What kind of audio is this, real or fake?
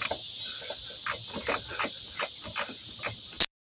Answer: real